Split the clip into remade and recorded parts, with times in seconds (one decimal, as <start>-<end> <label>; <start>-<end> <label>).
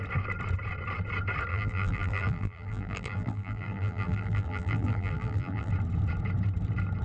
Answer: 0.0-1.5 recorded; 1.5-5.7 remade; 5.7-7.0 recorded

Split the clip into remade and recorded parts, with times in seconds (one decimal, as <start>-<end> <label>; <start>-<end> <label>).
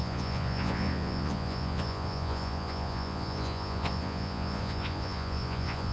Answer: 0.0-5.9 remade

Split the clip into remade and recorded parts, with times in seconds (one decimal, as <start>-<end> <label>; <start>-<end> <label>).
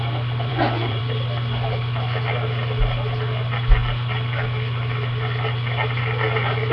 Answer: 0.0-0.5 recorded; 0.5-1.0 remade; 1.0-6.7 recorded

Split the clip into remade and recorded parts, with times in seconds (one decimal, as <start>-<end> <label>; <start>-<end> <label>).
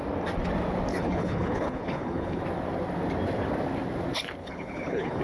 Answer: 0.0-0.9 recorded; 0.9-2.4 remade; 2.4-4.4 recorded; 4.4-5.2 remade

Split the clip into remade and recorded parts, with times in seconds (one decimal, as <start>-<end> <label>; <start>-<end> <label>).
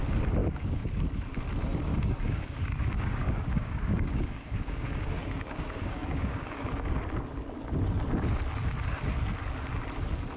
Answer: 0.0-0.4 recorded; 0.4-0.9 remade; 0.9-1.9 recorded; 1.9-7.0 remade; 7.0-10.4 recorded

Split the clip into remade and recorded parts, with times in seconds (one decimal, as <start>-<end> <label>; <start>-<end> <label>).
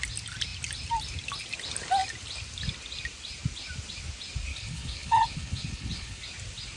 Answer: 0.0-4.5 recorded; 4.5-6.2 remade; 6.2-6.8 recorded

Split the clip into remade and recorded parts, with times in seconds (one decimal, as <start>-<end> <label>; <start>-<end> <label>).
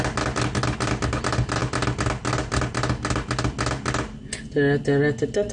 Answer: 0.0-5.5 recorded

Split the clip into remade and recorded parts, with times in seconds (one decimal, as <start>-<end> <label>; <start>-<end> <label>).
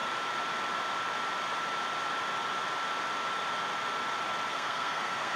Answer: 0.0-4.5 recorded; 4.5-5.4 remade